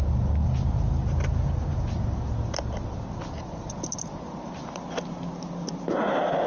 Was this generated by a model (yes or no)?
no